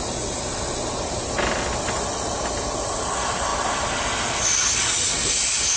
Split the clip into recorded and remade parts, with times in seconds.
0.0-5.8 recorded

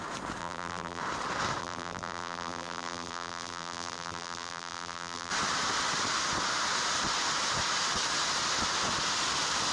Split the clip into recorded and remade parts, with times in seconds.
0.0-0.4 recorded; 0.4-1.0 remade; 1.0-1.6 recorded; 1.6-5.3 remade; 5.3-9.7 recorded

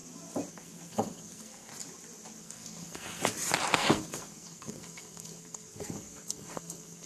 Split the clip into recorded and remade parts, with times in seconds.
0.0-0.5 recorded; 0.5-1.7 remade; 1.7-2.4 recorded; 2.4-3.2 remade; 3.2-3.7 recorded; 3.7-7.1 remade